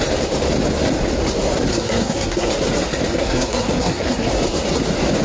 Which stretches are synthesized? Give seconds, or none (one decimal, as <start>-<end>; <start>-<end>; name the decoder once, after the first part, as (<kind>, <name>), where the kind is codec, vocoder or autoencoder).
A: 1.7-2.5 (codec, SNAC); 3.1-4.3